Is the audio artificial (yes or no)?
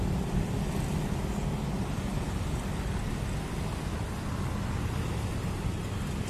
no